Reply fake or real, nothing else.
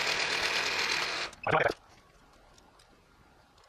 real